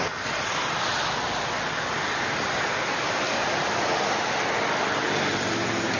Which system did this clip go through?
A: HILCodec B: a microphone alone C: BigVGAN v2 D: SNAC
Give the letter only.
B